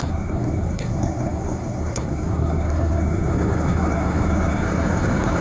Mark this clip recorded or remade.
remade